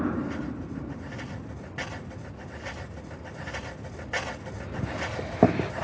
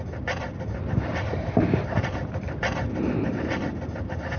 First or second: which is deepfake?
second